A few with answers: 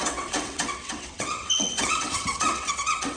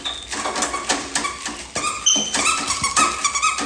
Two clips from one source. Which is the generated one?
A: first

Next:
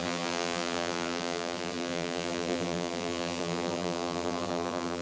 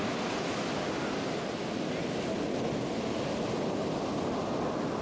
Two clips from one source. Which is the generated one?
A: first